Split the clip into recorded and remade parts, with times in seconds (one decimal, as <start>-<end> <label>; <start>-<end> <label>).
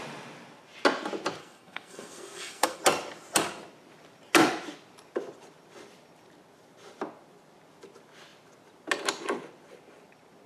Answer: 0.0-1.4 recorded; 1.4-2.8 remade; 2.8-10.5 recorded